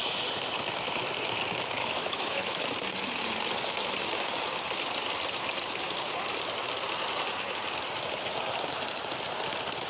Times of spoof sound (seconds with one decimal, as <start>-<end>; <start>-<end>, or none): 1.8-2.7